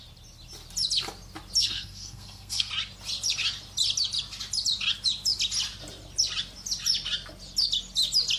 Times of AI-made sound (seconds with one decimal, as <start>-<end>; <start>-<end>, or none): 1.6-2.7